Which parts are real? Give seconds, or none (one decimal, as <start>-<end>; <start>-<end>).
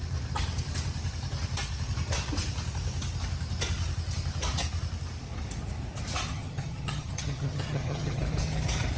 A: 0.0-6.3; 8.2-9.0